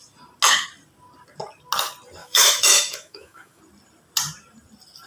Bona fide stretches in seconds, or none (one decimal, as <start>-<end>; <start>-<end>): 0.0-2.2; 3.6-5.1

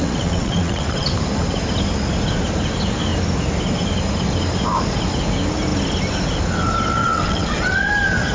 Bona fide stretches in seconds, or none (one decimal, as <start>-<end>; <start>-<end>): 1.1-7.0; 7.9-8.3

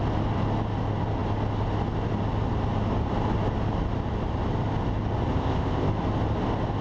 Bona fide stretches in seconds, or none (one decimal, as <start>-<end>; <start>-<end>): 0.0-5.3; 5.9-6.8

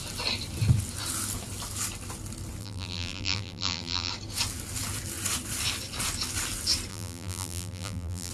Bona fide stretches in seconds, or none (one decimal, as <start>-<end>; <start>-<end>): 0.0-2.6; 4.1-6.9

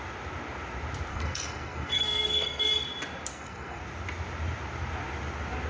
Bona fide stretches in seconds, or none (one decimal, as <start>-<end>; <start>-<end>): 0.0-1.1; 2.7-3.3; 3.8-5.7

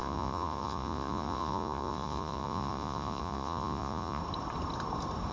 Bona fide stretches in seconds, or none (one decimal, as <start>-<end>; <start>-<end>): 4.2-5.3